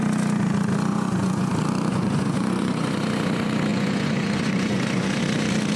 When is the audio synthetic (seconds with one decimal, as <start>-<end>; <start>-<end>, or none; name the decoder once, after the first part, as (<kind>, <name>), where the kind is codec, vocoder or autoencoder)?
0.9-1.5 (vocoder, Vocos); 1.9-3.0; 3.7-5.2